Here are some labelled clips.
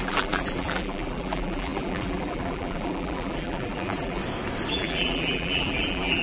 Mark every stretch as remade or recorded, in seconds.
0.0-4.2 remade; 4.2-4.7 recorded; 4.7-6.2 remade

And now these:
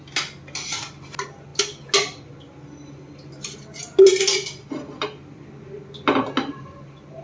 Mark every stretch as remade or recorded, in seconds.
0.0-7.2 recorded